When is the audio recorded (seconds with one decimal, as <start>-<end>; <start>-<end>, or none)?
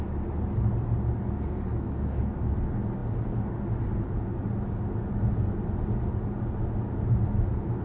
0.0-1.7; 2.2-7.8